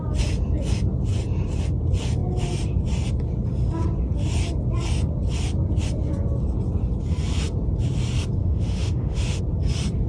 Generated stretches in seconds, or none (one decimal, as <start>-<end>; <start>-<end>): 8.4-9.4